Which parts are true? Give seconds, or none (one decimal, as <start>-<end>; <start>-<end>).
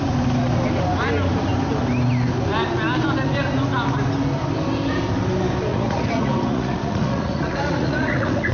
0.0-5.7